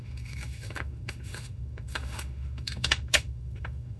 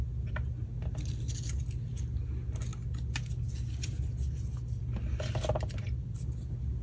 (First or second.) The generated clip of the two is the first